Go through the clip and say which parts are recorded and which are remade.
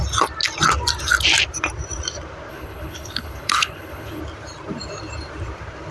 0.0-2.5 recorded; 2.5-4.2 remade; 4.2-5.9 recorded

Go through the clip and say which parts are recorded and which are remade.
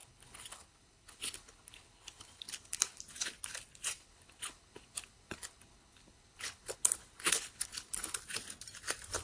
0.0-3.0 remade; 3.0-4.0 recorded; 4.0-8.2 remade; 8.2-9.2 recorded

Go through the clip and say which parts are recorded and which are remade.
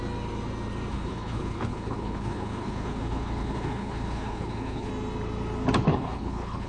0.0-0.9 recorded; 0.9-4.9 remade; 4.9-5.9 recorded; 5.9-6.7 remade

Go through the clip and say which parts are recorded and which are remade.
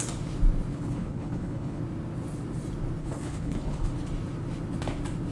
0.0-0.7 recorded; 0.7-1.8 remade; 1.8-3.0 recorded; 3.0-3.9 remade; 3.9-5.3 recorded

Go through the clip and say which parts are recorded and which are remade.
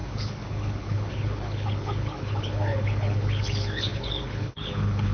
0.0-5.1 remade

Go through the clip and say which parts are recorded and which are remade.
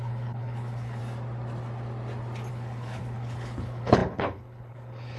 0.0-1.0 remade; 1.0-2.5 recorded; 2.5-5.2 remade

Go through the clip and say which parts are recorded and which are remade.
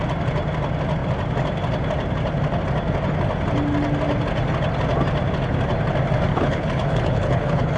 0.0-6.3 recorded; 6.3-7.8 remade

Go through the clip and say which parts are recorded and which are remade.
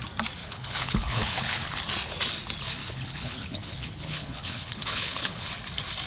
0.0-0.4 recorded; 0.4-1.8 remade; 1.8-2.8 recorded; 2.8-5.5 remade; 5.5-6.1 recorded